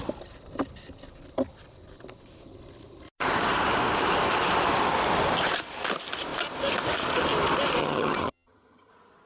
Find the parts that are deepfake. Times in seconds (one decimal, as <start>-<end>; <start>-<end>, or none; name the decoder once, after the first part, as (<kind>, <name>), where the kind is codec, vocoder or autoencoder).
7.8-8.9 (vocoder, HiFi-GAN)